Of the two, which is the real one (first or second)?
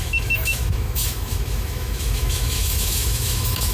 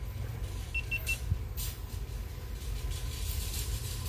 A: second